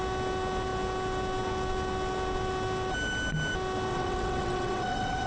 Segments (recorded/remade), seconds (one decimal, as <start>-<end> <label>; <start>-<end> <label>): 0.0-3.9 recorded; 3.9-5.3 remade

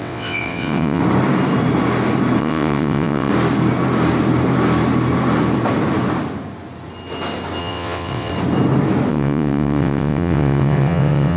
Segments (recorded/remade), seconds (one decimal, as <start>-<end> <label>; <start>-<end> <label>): 0.0-1.0 remade; 1.0-2.4 recorded; 2.4-3.3 remade; 3.3-7.6 recorded; 7.6-8.3 remade; 8.3-9.1 recorded; 9.1-11.4 remade